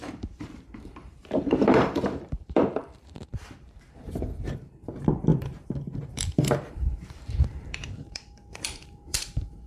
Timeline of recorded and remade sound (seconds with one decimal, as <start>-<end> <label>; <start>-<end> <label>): 0.0-9.7 remade